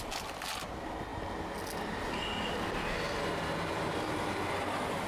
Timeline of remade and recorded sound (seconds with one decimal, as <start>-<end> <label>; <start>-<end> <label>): 0.0-5.1 recorded